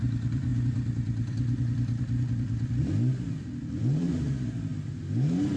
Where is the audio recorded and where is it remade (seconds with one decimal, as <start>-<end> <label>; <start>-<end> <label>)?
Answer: 0.0-4.7 remade; 4.7-5.6 recorded